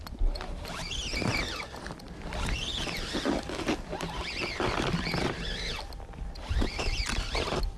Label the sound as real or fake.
real